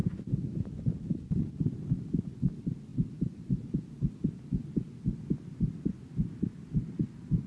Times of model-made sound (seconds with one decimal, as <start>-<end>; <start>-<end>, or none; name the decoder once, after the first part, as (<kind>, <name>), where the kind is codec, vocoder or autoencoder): 0.0-1.4 (vocoder, BigVGAN v2); 2.9-4.1